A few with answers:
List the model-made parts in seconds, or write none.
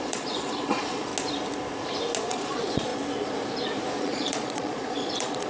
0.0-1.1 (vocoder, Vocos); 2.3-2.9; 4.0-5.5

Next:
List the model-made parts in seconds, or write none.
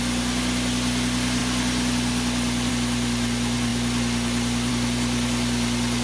none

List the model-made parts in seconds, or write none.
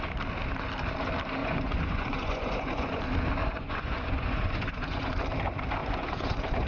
1.4-3.0 (vocoder, Vocos); 3.4-5.1; 5.8-6.7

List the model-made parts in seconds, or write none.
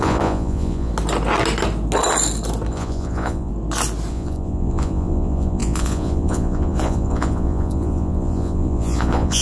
0.0-0.9 (vocoder, Vocos); 2.7-3.5; 4.1-9.4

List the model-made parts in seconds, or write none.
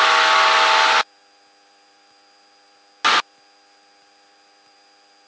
none